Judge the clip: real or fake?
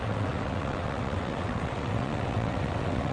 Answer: fake